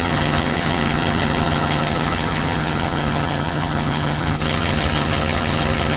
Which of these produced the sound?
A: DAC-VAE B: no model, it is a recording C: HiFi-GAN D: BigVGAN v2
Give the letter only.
C